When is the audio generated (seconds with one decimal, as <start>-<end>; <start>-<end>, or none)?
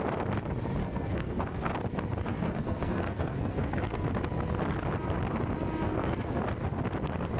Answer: 0.8-1.7; 2.3-4.1; 5.9-6.4